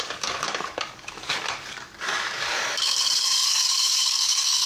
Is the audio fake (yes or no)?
yes